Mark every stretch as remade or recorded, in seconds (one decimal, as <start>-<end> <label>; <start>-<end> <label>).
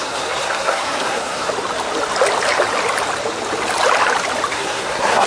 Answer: 0.0-1.5 remade; 1.5-4.5 recorded; 4.5-5.3 remade